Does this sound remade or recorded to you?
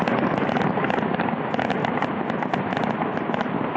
recorded